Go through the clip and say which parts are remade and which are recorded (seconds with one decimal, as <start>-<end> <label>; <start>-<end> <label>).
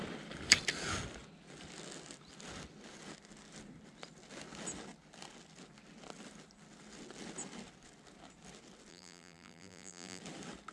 0.0-8.9 recorded; 8.9-10.2 remade; 10.2-10.7 recorded